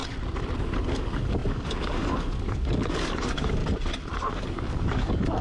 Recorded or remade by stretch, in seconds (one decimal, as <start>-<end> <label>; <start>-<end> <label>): 0.0-0.6 recorded; 0.6-3.6 remade; 3.6-4.3 recorded; 4.3-5.4 remade